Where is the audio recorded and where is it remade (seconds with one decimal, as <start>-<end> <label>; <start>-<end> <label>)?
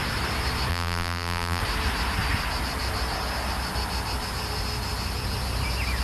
0.0-0.7 recorded; 0.7-1.6 remade; 1.6-6.0 recorded